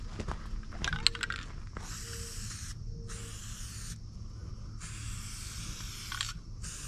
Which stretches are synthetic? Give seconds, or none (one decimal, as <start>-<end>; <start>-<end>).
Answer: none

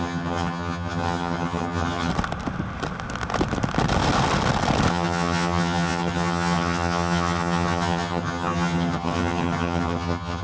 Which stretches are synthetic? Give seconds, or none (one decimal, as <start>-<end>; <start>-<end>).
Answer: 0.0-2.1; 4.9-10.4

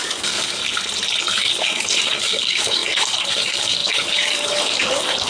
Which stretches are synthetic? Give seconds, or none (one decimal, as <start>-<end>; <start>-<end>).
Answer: 0.0-0.6; 1.2-5.3

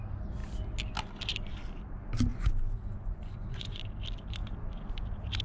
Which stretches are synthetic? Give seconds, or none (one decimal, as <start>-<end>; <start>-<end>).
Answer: 2.3-3.8